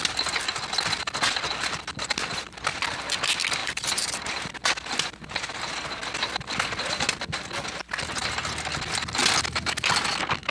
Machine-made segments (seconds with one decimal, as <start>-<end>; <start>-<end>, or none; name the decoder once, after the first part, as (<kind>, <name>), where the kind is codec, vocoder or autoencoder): 3.6-4.5 (vocoder, BigVGAN v2)